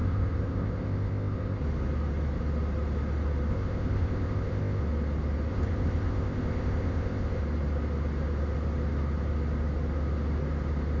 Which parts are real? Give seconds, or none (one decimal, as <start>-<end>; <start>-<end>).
1.6-3.5; 4.8-5.5; 7.4-11.0